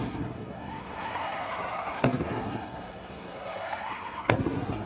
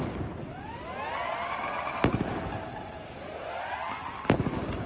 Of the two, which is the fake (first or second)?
first